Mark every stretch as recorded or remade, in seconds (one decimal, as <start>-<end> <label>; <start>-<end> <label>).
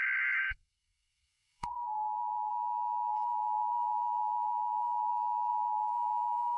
0.0-0.4 recorded; 0.4-2.5 remade; 2.5-3.1 recorded; 3.1-5.1 remade; 5.1-5.5 recorded; 5.5-6.6 remade